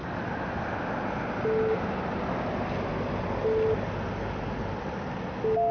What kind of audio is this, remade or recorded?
recorded